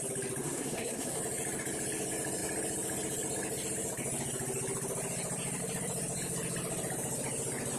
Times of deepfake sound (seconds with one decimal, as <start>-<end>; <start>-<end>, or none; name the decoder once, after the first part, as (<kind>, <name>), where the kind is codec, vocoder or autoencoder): 0.4-1.2 (codec, SNAC)